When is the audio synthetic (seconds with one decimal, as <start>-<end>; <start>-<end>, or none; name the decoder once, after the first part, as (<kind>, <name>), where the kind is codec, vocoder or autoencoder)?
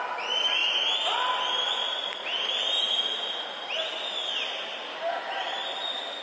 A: none